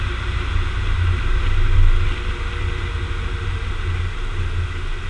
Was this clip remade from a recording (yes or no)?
no